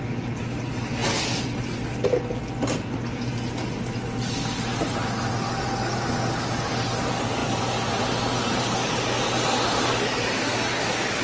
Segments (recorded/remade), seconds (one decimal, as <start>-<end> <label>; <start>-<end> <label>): 0.0-11.2 recorded